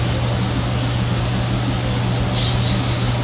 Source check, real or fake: real